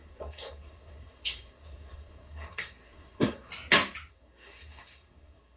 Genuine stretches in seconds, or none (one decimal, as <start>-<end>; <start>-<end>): 3.5-4.1